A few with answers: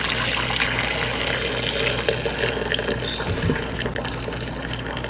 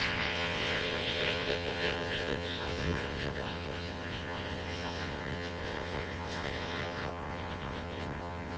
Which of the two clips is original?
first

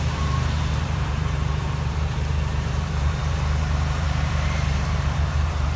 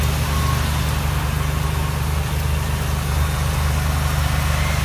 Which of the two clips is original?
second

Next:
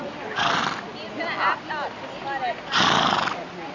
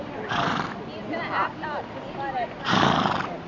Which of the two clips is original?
first